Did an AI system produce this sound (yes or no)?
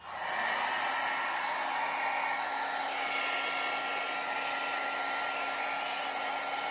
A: no